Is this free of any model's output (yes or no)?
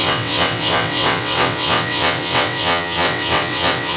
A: no